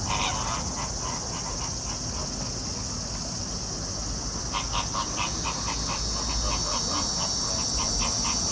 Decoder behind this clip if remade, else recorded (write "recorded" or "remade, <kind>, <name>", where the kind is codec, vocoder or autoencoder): recorded